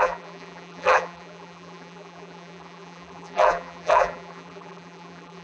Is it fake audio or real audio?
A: fake